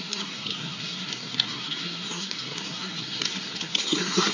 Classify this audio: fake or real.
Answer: fake